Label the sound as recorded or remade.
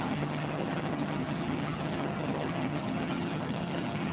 remade